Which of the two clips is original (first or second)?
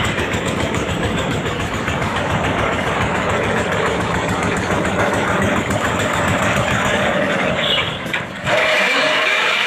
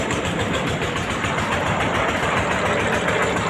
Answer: second